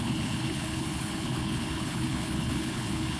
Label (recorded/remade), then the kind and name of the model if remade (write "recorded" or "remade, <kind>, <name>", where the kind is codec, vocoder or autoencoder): remade, codec, HILCodec